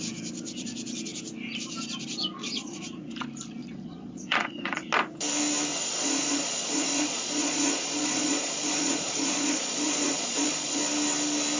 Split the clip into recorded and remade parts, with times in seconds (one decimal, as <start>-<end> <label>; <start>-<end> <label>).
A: 0.0-2.4 recorded; 2.4-3.1 remade; 3.1-3.6 recorded; 3.6-4.8 remade; 4.8-5.7 recorded; 5.7-10.8 remade; 10.8-11.6 recorded